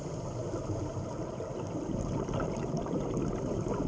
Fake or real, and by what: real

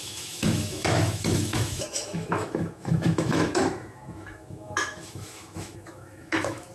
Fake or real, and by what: fake, autoencoder, DAC-VAE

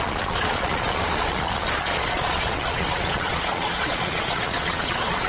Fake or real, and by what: fake, vocoder, Vocos